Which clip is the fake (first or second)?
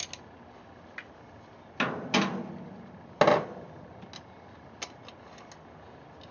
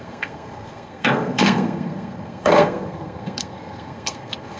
second